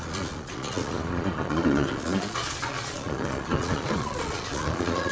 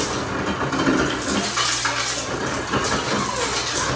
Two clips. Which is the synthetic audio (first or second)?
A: first